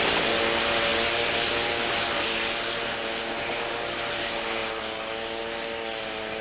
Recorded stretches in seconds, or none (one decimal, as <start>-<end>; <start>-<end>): 0.0-6.4